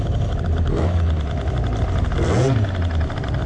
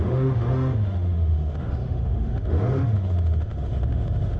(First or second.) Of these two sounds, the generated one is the second